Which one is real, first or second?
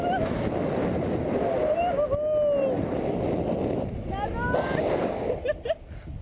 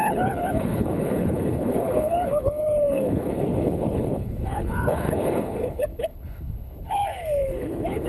first